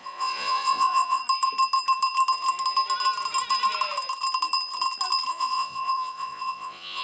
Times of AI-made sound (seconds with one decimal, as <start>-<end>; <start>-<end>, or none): 0.0-1.2; 5.3-7.0